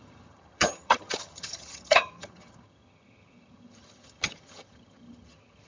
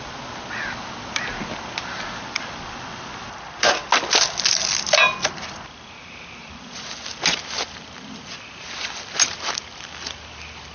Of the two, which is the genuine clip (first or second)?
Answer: second